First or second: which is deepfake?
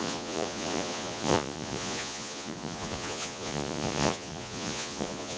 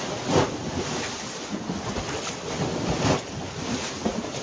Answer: first